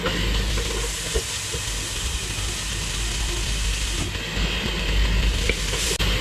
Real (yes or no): yes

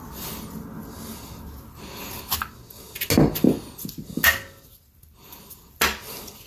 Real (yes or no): yes